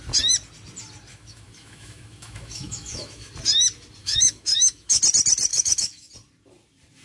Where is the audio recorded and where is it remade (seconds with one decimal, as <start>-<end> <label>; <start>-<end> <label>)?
0.0-1.1 recorded; 1.1-3.3 remade; 3.3-4.0 recorded; 4.0-5.0 remade; 5.0-5.5 recorded; 5.5-6.1 remade; 6.1-7.0 recorded